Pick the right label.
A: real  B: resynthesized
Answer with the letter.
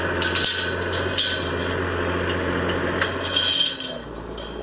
A